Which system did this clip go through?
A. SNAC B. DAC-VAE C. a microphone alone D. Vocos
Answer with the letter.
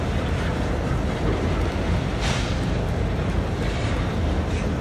C